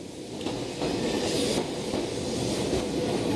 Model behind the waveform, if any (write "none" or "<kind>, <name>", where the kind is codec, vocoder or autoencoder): none